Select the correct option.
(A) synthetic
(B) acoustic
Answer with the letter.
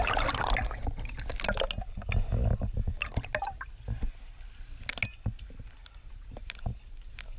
B